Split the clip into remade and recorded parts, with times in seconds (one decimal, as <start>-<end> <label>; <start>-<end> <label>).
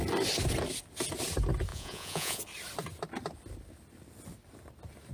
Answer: 0.0-1.7 recorded; 1.7-2.4 remade; 2.4-5.1 recorded